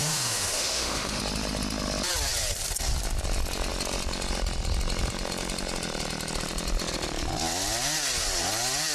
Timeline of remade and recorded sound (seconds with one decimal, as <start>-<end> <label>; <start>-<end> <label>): 0.0-1.2 remade; 1.2-8.9 recorded